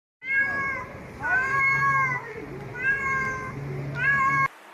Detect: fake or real real